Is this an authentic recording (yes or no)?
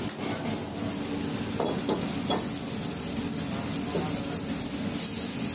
yes